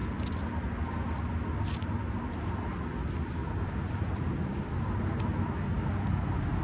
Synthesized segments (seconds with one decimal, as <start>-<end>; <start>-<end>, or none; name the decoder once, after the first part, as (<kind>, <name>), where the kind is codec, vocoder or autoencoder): 3.4-4.2 (vocoder, BigVGAN v2)

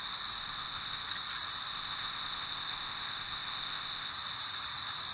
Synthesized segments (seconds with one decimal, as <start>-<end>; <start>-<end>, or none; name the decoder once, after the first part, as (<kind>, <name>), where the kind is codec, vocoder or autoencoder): 0.4-1.0 (codec, ZipCodec); 1.7-4.1

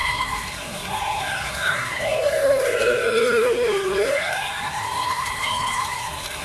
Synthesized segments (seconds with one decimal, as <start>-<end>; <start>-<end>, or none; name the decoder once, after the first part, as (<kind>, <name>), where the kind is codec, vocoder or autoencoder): 0.0-6.4 (codec, SNAC)

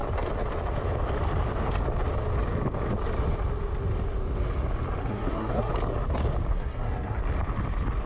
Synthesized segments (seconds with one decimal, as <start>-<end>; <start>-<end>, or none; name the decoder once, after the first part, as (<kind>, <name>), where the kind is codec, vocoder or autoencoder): 5.0-5.7 (codec, SNAC); 6.5-7.2

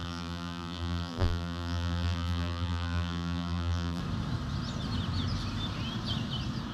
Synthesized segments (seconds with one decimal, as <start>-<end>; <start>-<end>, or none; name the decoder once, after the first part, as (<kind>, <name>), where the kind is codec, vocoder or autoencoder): 0.0-4.0 (vocoder, BigVGAN v2)